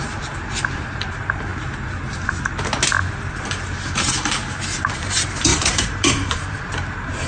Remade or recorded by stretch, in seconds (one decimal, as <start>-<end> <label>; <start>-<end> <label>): 0.0-1.5 remade; 1.5-3.3 recorded; 3.3-7.3 remade